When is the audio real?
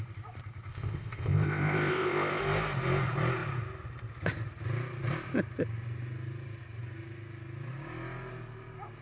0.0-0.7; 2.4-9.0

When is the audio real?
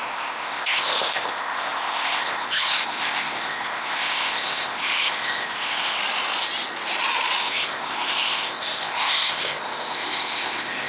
6.0-7.4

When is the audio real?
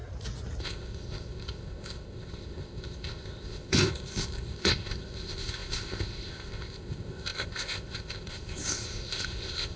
0.0-0.6